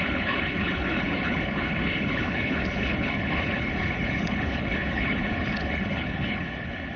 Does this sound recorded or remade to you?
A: remade